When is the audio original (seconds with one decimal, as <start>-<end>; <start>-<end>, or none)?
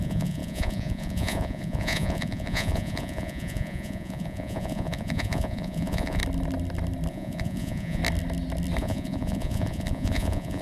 6.2-7.1; 8.0-8.8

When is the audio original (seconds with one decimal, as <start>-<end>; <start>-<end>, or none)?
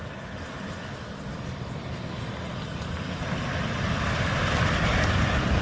0.0-5.6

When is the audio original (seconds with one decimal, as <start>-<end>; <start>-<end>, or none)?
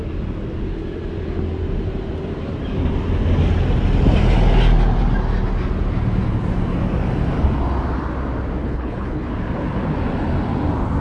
0.0-8.6; 9.3-11.0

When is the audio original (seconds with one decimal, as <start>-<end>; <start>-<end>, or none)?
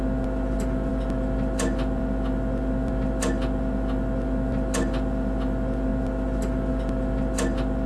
0.0-7.9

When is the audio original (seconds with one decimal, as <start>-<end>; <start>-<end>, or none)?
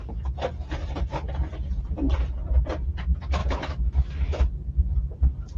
0.0-3.4; 4.4-5.6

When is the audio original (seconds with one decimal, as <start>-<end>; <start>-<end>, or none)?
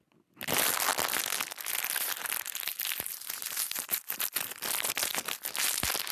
0.0-3.1; 3.8-6.1